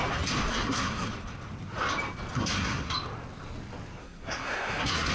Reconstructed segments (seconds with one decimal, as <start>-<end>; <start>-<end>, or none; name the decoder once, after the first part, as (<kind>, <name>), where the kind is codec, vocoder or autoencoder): 0.5-1.1 (codec, SNAC); 2.3-2.9; 4.0-5.1